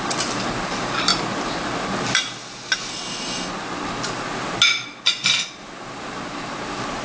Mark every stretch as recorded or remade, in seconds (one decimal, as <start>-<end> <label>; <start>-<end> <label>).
0.0-2.9 recorded; 2.9-3.5 remade; 3.5-7.0 recorded